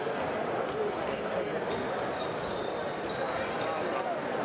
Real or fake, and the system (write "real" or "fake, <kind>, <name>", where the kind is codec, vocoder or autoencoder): real